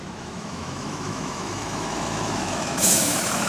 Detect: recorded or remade remade